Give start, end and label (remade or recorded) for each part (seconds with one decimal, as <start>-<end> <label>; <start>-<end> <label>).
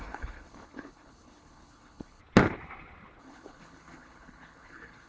0.0-2.2 remade; 2.2-3.2 recorded; 3.2-5.1 remade